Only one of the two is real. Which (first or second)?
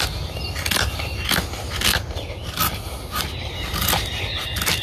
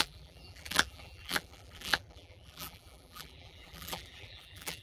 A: first